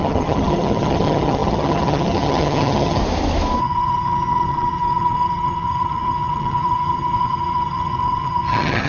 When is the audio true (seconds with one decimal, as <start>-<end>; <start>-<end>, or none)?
3.0-3.6